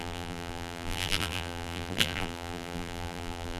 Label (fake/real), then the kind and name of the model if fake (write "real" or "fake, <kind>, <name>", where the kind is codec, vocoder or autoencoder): fake, vocoder, BigVGAN v2